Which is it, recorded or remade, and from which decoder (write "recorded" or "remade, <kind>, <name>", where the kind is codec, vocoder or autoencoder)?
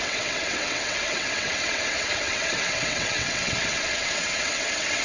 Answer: remade, vocoder, WaveNeXt